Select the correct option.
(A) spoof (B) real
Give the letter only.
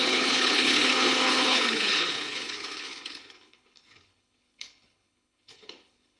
A